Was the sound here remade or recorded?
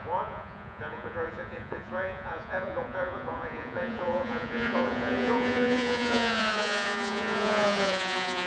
remade